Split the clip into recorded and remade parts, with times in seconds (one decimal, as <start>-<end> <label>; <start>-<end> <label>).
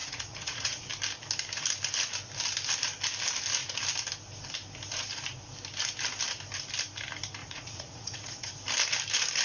0.0-0.8 remade; 0.8-7.4 recorded; 7.4-8.5 remade; 8.5-9.4 recorded